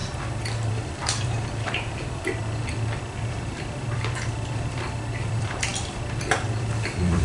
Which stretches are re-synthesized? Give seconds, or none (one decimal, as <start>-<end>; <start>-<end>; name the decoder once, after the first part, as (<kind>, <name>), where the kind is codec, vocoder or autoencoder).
0.7-2.4 (vocoder, BigVGAN v2); 3.2-7.2